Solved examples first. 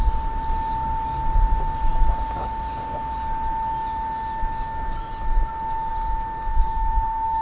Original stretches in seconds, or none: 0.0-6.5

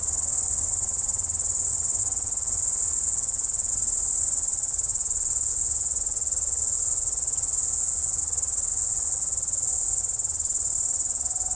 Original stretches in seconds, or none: 0.0-2.0; 3.7-4.9; 8.2-8.7; 10.0-11.5